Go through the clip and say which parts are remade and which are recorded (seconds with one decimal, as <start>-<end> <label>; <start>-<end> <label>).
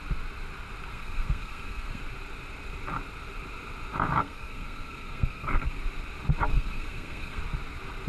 0.0-0.9 recorded; 0.9-2.0 remade; 2.0-4.2 recorded; 4.2-5.7 remade; 5.7-6.5 recorded; 6.5-7.4 remade; 7.4-8.1 recorded